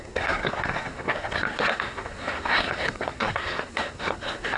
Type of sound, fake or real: fake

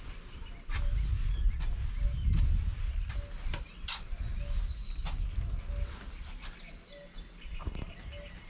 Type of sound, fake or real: real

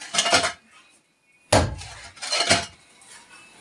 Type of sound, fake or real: real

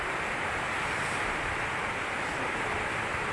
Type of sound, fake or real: real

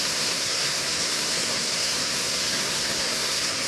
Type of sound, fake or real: fake